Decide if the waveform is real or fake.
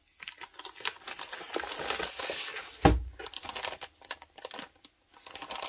real